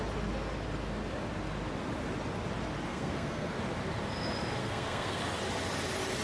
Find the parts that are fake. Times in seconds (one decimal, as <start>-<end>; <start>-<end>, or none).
2.9-3.5; 4.6-5.2